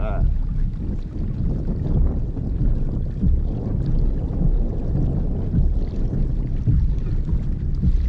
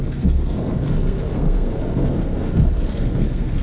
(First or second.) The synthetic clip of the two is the second